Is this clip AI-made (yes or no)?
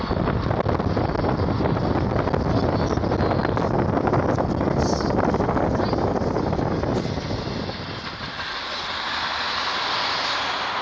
no